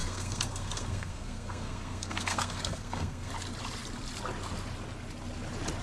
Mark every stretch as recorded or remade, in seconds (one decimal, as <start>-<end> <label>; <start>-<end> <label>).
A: 0.0-3.3 remade; 3.3-5.8 recorded